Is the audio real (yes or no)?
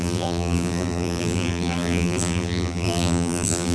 no